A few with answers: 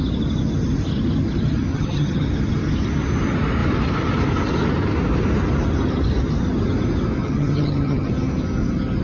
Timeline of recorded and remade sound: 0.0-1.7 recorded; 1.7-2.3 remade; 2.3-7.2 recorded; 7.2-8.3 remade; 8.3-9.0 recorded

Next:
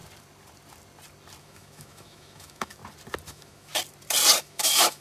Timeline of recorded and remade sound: 0.0-1.4 recorded; 1.4-2.8 remade; 2.8-3.3 recorded; 3.3-3.7 remade; 3.7-4.4 recorded; 4.4-5.0 remade

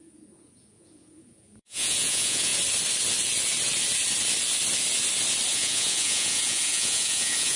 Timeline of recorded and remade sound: 0.0-2.5 remade; 2.5-5.5 recorded; 5.5-7.6 remade

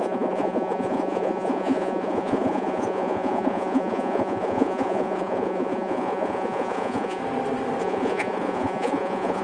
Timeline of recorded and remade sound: 0.0-7.2 remade; 7.2-7.8 recorded; 7.8-9.4 remade

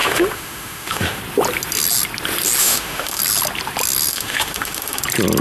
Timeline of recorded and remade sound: 0.0-1.2 remade; 1.2-2.6 recorded; 2.6-3.2 remade; 3.2-4.1 recorded; 4.1-5.0 remade; 5.0-5.4 recorded

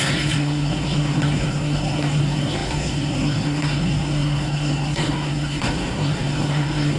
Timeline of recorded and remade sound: 0.0-7.0 remade